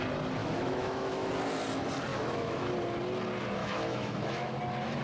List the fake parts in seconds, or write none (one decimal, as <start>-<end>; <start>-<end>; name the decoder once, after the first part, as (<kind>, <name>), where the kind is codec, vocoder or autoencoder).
0.4-1.3 (autoencoder, DAC-VAE); 2.1-2.7; 3.6-4.6